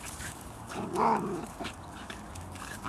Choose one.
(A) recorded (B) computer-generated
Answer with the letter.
B